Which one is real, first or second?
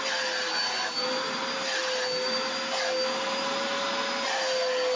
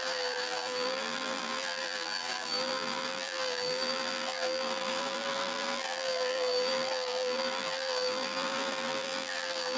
first